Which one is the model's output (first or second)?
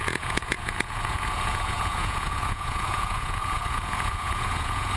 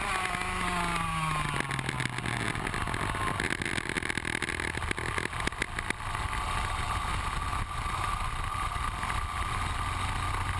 first